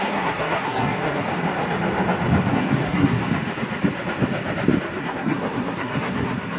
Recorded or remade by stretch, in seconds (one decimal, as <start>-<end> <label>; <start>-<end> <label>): 0.0-1.3 remade; 1.3-2.5 recorded; 2.5-3.2 remade; 3.2-5.0 recorded; 5.0-6.6 remade